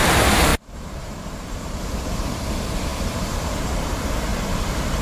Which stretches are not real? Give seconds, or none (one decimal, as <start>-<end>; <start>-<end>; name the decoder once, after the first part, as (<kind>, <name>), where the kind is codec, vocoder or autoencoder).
0.0-5.0 (vocoder, BigVGAN v2)